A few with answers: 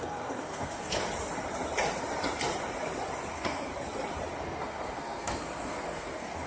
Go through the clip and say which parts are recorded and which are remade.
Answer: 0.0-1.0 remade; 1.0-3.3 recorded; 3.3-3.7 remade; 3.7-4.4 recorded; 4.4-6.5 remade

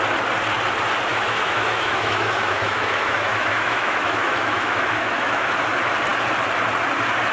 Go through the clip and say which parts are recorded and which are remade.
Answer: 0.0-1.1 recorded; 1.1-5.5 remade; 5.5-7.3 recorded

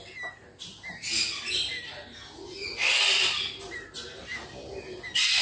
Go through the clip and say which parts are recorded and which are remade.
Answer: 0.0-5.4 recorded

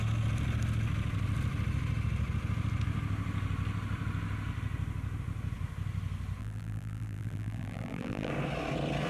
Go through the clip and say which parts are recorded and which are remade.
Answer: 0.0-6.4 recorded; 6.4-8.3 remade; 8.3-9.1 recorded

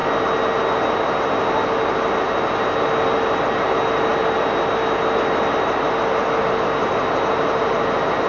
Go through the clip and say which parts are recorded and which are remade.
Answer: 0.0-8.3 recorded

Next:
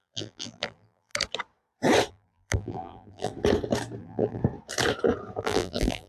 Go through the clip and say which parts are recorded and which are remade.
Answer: 0.0-1.1 remade; 1.1-2.1 recorded; 2.1-3.3 remade; 3.3-4.0 recorded; 4.0-4.4 remade; 4.4-5.4 recorded; 5.4-6.1 remade

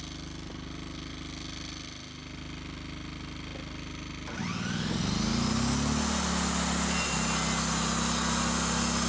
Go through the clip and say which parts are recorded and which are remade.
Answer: 0.0-9.1 recorded